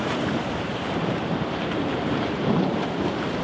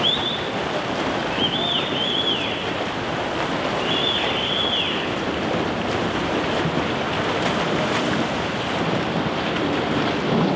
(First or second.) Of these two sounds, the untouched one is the second